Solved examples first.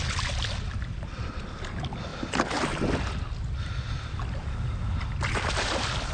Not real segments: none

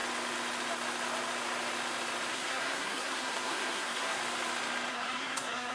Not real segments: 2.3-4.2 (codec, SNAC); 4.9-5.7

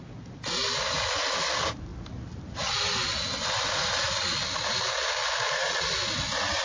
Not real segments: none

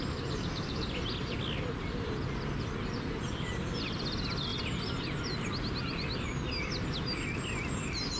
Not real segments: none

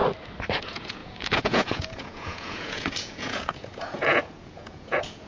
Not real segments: 0.6-5.3 (vocoder, Vocos)

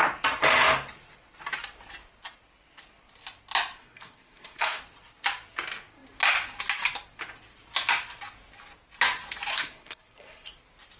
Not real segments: 3.8-4.8 (codec, SNAC); 9.5-10.5